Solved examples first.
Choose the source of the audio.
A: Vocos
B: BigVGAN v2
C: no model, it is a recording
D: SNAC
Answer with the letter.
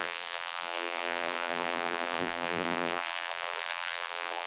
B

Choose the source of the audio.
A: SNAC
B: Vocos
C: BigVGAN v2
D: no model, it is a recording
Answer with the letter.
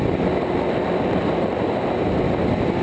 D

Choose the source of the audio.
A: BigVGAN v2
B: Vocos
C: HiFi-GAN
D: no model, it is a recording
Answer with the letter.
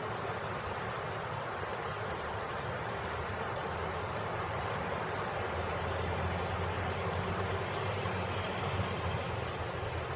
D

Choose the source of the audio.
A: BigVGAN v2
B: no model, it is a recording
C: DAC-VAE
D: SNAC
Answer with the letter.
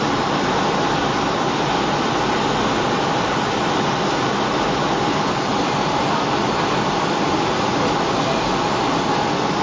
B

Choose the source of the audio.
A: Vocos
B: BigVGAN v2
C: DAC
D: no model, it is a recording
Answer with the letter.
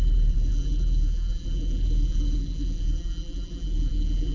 B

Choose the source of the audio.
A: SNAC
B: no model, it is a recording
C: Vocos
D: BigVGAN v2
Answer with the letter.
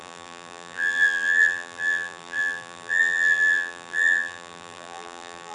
D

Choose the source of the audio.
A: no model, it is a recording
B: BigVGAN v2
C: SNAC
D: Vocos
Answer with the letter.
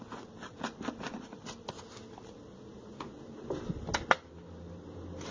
A